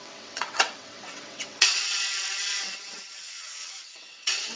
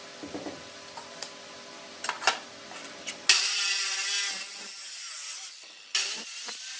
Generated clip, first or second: first